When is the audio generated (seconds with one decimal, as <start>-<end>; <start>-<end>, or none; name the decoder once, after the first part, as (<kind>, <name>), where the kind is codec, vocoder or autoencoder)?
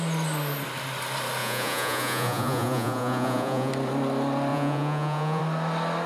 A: 1.4-3.7 (vocoder, Vocos); 4.5-5.4